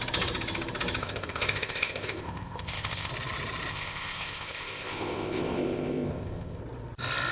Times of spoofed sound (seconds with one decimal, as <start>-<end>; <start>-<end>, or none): 1.0-3.1; 3.7-6.6